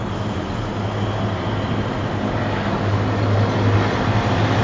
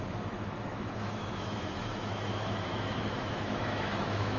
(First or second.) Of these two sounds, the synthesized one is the second